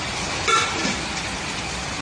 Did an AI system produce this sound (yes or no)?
no